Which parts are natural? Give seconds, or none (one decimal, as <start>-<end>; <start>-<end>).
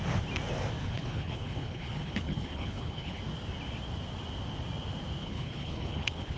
0.0-0.8; 3.2-5.2